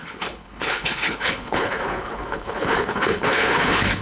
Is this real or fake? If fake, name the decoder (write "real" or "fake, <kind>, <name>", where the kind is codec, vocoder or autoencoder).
fake, codec, HILCodec